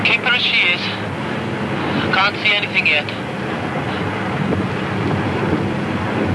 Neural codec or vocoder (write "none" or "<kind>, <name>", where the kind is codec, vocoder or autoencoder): none